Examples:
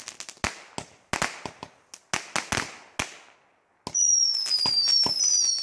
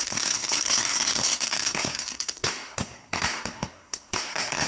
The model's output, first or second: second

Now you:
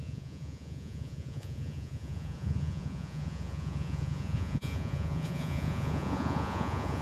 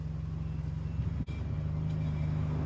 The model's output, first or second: first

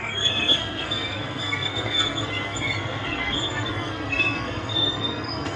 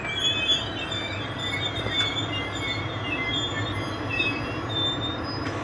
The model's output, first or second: first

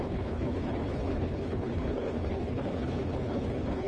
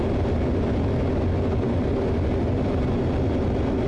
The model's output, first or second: first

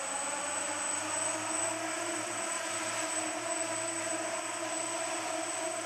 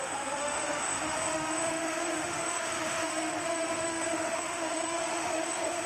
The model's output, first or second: second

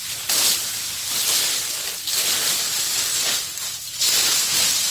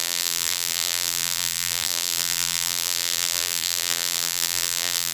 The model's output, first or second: second